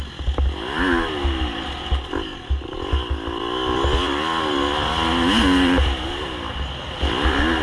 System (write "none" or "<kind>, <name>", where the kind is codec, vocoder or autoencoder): none